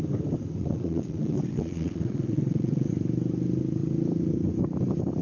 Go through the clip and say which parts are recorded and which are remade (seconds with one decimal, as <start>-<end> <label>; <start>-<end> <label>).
0.0-0.6 recorded; 0.6-2.9 remade; 2.9-5.2 recorded